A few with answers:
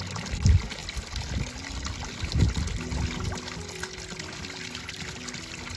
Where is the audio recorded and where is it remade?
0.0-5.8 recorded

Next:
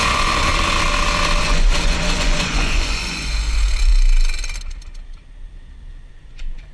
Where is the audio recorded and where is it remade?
0.0-0.5 remade; 0.5-1.4 recorded; 1.4-3.9 remade; 3.9-6.1 recorded; 6.1-6.7 remade

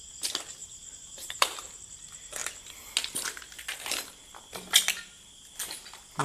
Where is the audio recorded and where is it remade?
0.0-0.6 recorded; 0.6-1.8 remade; 1.8-6.2 recorded

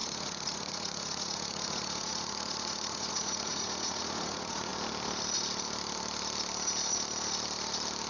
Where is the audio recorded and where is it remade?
0.0-4.7 remade; 4.7-8.1 recorded

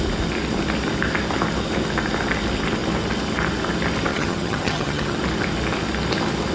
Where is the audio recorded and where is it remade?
0.0-4.1 recorded; 4.1-5.2 remade; 5.2-6.5 recorded